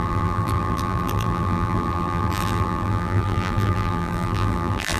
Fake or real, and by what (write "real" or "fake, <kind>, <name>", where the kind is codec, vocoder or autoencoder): fake, vocoder, BigVGAN v2